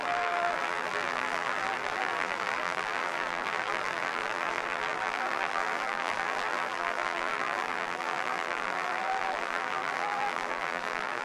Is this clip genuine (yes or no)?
no